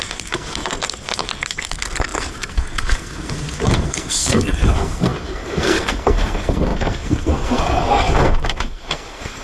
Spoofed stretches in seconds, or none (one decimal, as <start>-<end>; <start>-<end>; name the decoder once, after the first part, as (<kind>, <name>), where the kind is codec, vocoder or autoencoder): 0.0-9.4 (codec, SNAC)